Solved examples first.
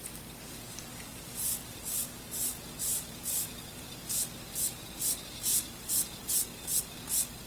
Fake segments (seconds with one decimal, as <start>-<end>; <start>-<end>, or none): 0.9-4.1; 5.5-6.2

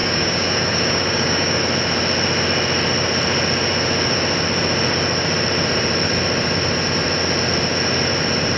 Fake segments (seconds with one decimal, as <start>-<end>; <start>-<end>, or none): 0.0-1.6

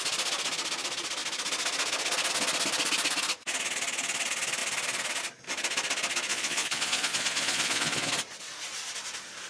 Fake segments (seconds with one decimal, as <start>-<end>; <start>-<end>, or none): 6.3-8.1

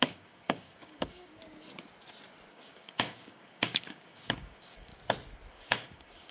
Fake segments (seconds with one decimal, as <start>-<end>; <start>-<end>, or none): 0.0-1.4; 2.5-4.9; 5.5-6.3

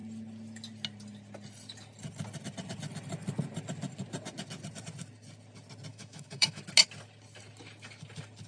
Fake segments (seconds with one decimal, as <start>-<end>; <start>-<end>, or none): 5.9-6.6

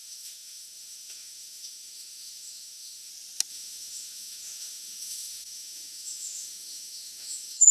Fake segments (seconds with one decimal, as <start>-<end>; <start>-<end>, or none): 0.0-3.1; 3.5-7.7

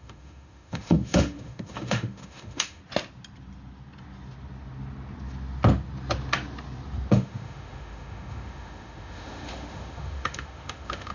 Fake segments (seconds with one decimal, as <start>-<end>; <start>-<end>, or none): 0.0-2.8; 7.1-11.1

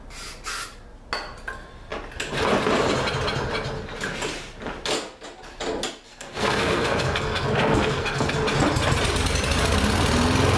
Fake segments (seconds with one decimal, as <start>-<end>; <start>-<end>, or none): 6.1-8.3